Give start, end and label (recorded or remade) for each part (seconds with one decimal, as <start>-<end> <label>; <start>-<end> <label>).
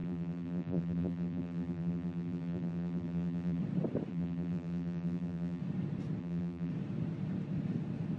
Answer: 0.0-3.6 remade; 3.6-4.1 recorded; 4.1-5.6 remade; 5.6-6.2 recorded; 6.2-6.7 remade; 6.7-8.2 recorded